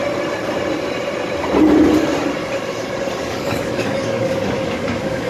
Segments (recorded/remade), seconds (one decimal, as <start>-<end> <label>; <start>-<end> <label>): 0.0-3.2 recorded; 3.2-5.3 remade